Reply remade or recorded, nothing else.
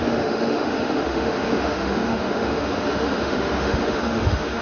remade